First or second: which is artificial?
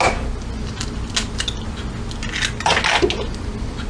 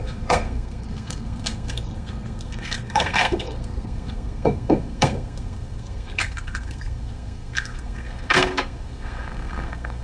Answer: second